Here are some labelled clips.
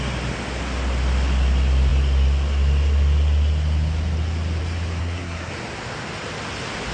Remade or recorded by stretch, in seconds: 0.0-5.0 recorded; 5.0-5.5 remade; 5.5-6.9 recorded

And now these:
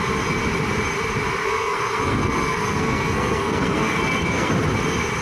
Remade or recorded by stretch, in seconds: 0.0-1.4 recorded; 1.4-4.5 remade; 4.5-5.2 recorded

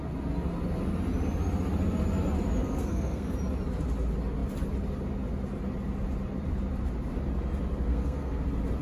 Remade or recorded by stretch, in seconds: 0.0-2.6 recorded; 2.6-3.3 remade; 3.3-7.9 recorded; 7.9-8.4 remade; 8.4-8.8 recorded

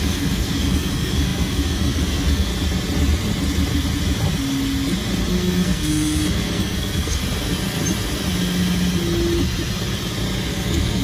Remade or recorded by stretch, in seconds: 0.0-2.5 remade; 2.5-5.3 recorded; 5.3-7.2 remade; 7.2-10.5 recorded; 10.5-11.0 remade

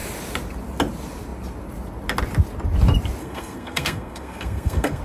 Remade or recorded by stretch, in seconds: 0.0-3.2 recorded; 3.2-5.0 remade